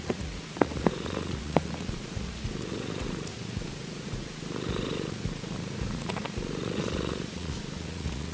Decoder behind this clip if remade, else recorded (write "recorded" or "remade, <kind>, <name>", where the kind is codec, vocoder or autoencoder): remade, vocoder, Vocos